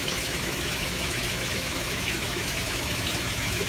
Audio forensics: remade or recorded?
remade